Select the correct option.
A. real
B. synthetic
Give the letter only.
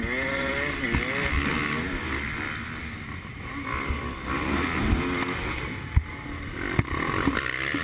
A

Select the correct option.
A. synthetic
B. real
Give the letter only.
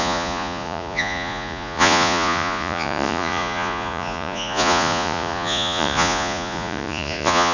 A